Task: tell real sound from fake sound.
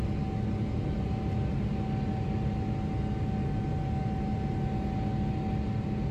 real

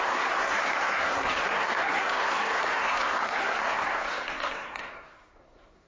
fake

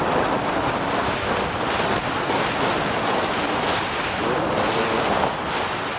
real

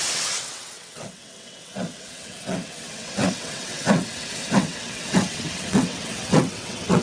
fake